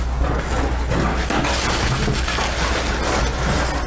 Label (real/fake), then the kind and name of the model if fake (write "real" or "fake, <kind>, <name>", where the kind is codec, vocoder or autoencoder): real